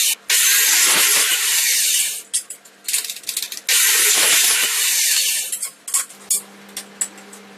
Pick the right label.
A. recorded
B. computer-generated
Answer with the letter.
A